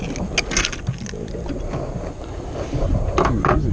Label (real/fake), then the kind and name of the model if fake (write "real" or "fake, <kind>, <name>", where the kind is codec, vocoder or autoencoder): real